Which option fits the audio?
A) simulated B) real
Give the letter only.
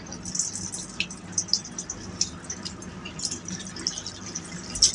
B